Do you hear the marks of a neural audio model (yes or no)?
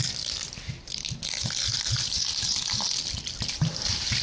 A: no